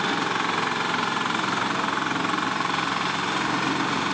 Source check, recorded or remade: remade